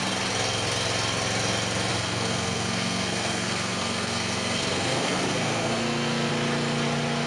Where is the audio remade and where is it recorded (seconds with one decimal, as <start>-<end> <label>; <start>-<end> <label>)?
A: 0.0-1.9 recorded; 1.9-6.3 remade; 6.3-7.3 recorded